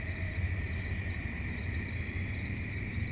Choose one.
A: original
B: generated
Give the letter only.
B